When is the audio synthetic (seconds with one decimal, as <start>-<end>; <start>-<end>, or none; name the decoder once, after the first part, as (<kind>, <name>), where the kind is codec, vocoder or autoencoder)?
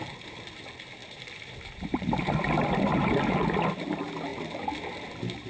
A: 1.0-2.2 (vocoder, BigVGAN v2)